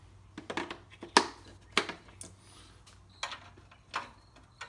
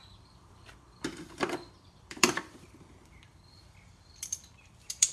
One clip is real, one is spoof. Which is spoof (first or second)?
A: second